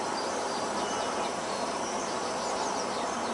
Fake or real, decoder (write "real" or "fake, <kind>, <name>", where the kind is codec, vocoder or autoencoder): fake, vocoder, BigVGAN v2